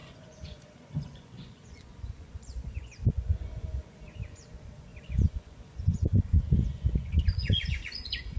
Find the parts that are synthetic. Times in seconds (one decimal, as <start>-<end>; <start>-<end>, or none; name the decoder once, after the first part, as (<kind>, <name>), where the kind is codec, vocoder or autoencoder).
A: 0.0-8.4 (vocoder, Vocos)